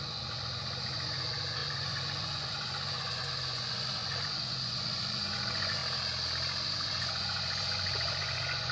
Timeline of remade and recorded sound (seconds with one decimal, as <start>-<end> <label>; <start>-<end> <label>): 0.0-5.8 remade; 5.8-6.6 recorded; 6.6-8.7 remade